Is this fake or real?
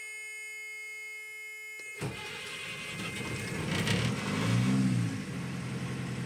real